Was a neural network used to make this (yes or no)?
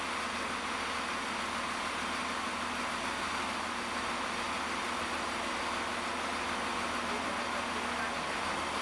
no